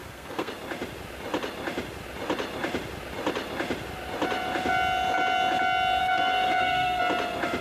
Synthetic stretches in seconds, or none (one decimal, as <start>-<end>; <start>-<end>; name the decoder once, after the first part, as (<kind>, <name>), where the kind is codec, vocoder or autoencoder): 0.0-0.5 (codec, SNAC); 6.0-7.0